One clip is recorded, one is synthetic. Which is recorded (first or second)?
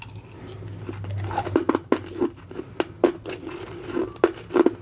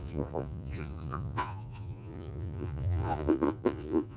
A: first